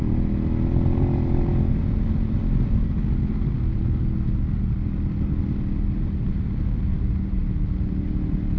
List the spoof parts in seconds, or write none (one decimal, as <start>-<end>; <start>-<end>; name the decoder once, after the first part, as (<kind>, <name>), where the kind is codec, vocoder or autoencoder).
none